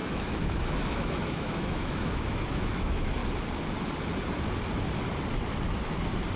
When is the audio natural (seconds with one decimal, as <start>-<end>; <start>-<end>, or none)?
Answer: 3.2-6.4